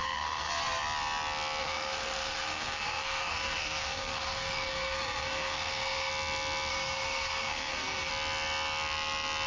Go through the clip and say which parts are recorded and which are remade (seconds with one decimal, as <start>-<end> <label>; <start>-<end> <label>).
0.0-0.5 remade; 0.5-1.6 recorded; 1.6-6.1 remade; 6.1-6.7 recorded; 6.7-8.1 remade; 8.1-9.5 recorded